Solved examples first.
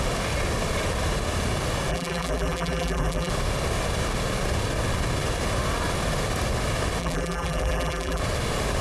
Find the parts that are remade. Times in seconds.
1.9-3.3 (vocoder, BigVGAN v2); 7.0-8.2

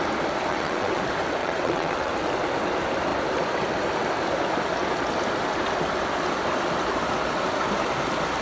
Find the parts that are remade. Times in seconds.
0.5-1.0 (vocoder, WaveNeXt); 1.4-2.1

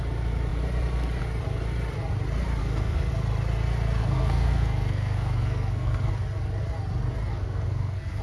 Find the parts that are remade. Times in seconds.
2.6-3.1 (codec, SNAC); 4.0-6.1; 7.3-8.2

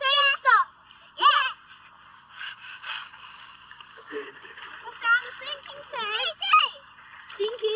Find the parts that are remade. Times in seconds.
2.1-4.7 (codec, DAC)

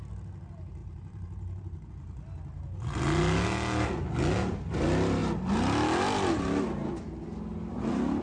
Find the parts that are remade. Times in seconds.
0.8-1.9 (vocoder, BigVGAN v2)

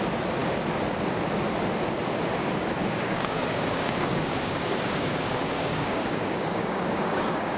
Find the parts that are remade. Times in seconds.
2.8-7.6 (codec, DAC)